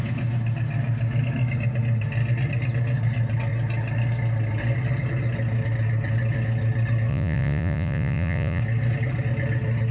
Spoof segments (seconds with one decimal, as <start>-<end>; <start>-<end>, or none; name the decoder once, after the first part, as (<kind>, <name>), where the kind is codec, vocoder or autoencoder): 7.1-8.6 (vocoder, Vocos)